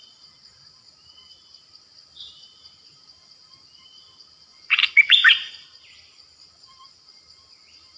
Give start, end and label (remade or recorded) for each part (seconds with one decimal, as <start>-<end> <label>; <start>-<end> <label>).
0.0-4.5 recorded; 4.5-5.2 remade; 5.2-8.0 recorded